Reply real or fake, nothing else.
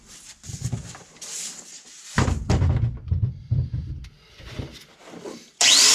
fake